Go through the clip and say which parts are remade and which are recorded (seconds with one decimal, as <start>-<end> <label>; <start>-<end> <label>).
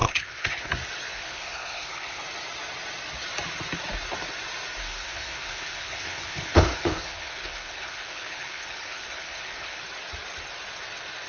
0.0-0.7 remade; 0.7-1.1 recorded; 1.1-2.2 remade; 2.2-4.8 recorded; 4.8-9.8 remade; 9.8-11.3 recorded